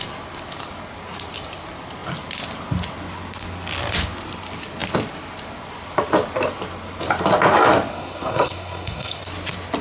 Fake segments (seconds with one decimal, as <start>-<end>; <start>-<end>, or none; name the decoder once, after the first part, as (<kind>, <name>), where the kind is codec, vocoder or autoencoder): 7.9-9.2 (codec, SNAC)